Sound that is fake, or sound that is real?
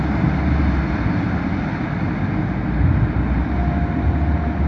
real